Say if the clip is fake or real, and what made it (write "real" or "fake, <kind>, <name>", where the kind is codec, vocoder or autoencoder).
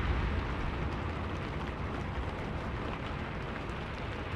real